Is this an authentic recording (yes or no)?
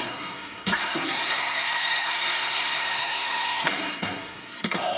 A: no